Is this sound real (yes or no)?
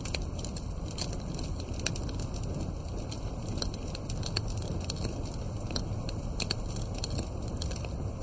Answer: yes